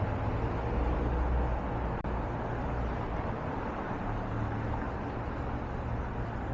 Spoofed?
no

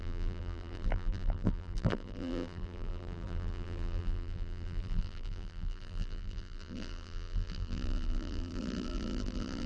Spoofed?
yes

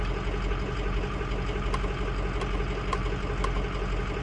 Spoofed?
no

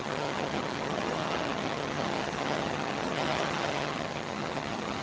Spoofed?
yes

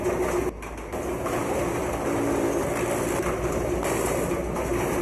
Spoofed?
no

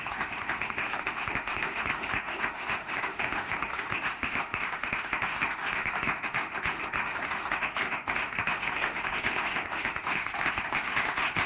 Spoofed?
yes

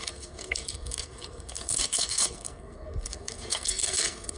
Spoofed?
yes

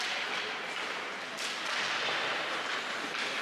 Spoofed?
no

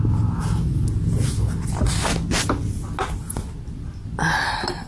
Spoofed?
no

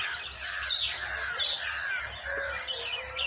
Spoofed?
no